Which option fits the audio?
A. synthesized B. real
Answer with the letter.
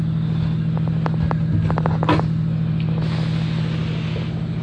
B